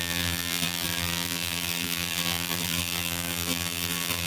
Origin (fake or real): fake